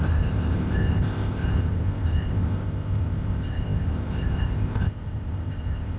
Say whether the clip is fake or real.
fake